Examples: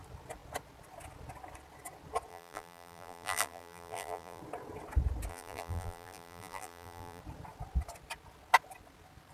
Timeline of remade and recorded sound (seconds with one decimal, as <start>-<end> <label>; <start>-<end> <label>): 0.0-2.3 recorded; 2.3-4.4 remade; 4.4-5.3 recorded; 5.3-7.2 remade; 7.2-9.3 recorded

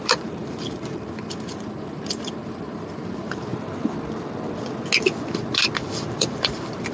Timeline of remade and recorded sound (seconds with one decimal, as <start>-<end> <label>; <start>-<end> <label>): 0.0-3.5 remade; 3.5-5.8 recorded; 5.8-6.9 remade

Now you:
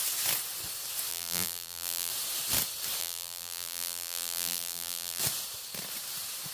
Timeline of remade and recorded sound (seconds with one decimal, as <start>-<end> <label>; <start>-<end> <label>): 0.0-1.1 recorded; 1.1-2.1 remade; 2.1-3.0 recorded; 3.0-5.2 remade; 5.2-6.5 recorded

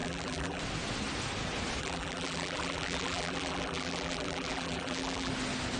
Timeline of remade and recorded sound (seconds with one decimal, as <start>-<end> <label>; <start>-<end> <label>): 0.0-0.6 remade; 0.6-1.8 recorded; 1.8-5.3 remade; 5.3-5.8 recorded